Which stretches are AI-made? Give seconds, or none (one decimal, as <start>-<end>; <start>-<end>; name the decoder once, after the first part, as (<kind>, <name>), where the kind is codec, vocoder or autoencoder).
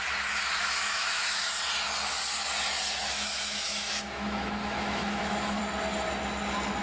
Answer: 0.6-1.5 (autoencoder, DAC-VAE); 3.0-5.6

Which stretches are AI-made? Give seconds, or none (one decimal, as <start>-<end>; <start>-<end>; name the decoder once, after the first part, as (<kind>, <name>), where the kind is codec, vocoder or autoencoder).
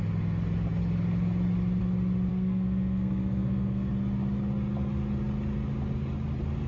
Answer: 2.3-3.9 (codec, SNAC)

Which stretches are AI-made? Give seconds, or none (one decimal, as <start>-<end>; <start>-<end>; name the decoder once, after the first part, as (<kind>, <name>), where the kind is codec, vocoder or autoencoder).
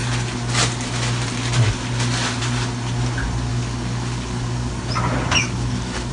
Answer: 3.5-4.7 (codec, DAC); 5.4-6.1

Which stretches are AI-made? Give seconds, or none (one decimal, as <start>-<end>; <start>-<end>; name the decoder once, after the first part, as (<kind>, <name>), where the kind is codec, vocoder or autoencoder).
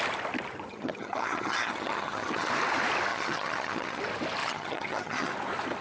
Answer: 0.7-2.5 (vocoder, HiFi-GAN); 3.1-4.0; 4.4-5.3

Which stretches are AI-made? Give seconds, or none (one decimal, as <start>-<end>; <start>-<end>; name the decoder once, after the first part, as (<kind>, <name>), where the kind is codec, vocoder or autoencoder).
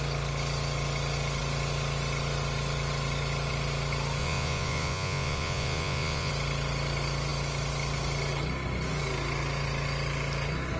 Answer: 4.2-6.3 (vocoder, Vocos)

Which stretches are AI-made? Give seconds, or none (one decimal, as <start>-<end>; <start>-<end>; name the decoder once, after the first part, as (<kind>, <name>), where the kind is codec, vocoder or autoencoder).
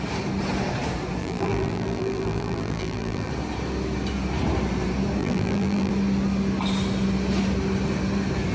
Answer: 1.2-3.3 (vocoder, BigVGAN v2); 5.2-5.9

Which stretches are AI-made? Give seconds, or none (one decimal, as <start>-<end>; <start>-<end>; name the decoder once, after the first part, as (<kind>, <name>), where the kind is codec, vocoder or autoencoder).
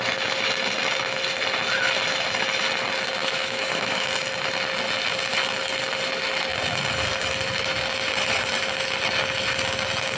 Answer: 3.2-4.1 (autoencoder, DAC-VAE)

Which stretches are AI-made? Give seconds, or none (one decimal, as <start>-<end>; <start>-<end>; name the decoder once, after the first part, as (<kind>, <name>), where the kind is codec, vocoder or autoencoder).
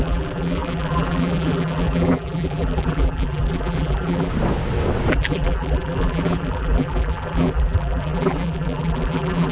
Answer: 0.0-4.3 (vocoder, BigVGAN v2); 5.1-9.5